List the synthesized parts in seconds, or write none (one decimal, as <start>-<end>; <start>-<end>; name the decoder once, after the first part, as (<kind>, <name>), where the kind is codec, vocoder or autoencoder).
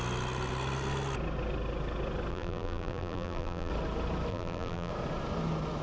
2.3-3.7 (vocoder, BigVGAN v2); 4.3-4.9